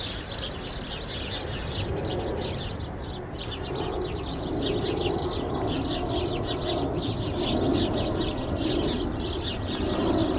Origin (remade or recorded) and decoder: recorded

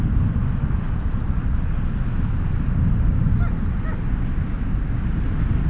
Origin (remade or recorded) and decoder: recorded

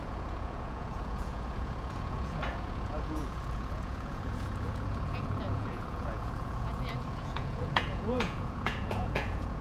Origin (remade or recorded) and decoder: remade, vocoder, Vocos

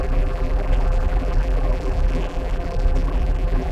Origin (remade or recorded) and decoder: remade, vocoder, BigVGAN v2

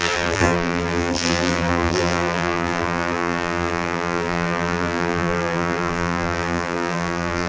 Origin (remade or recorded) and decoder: remade, vocoder, BigVGAN v2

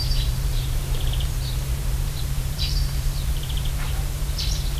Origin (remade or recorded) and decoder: remade, vocoder, BigVGAN v2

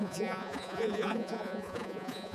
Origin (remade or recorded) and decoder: remade, vocoder, Vocos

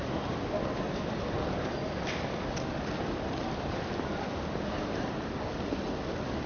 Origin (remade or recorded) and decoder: remade, vocoder, BigVGAN v2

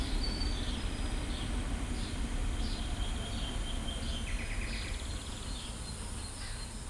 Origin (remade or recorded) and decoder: recorded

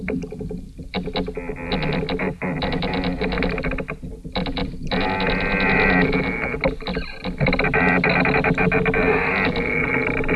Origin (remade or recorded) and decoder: recorded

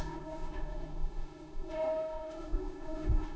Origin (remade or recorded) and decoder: remade, autoencoder, DAC-VAE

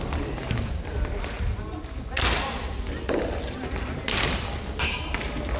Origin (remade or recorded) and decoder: recorded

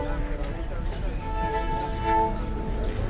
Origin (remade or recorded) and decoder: recorded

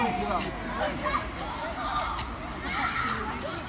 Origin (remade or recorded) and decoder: recorded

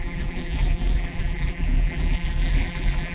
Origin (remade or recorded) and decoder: remade, vocoder, BigVGAN v2